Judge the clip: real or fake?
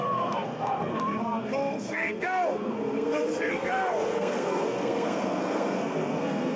fake